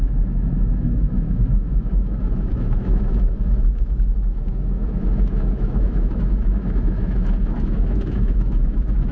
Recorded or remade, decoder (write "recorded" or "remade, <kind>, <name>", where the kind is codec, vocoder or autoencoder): remade, autoencoder, DAC-VAE